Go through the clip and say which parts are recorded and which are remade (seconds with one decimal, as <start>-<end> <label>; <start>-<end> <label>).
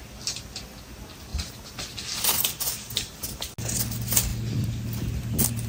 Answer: 0.0-5.7 recorded